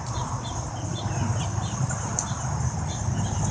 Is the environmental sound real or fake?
real